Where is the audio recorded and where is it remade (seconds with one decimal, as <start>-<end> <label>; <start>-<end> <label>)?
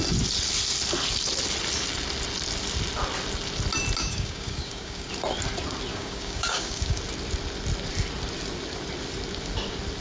0.0-4.0 recorded; 4.0-5.1 remade; 5.1-5.9 recorded; 5.9-7.0 remade; 7.0-10.0 recorded